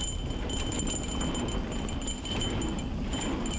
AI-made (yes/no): no